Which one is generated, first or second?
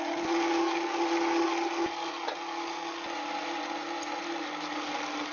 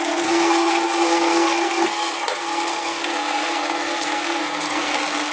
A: second